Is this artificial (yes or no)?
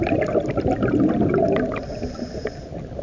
no